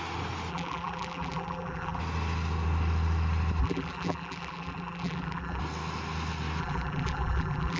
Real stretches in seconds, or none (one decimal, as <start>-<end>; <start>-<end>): 0.0-0.5; 2.0-3.6; 5.6-6.6